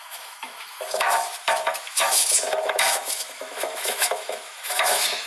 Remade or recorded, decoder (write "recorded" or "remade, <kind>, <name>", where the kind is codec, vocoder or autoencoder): remade, autoencoder, DAC-VAE